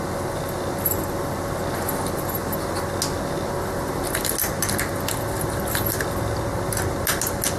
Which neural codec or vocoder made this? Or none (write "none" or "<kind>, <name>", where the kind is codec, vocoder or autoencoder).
none